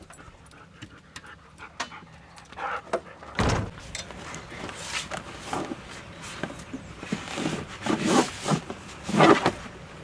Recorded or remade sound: recorded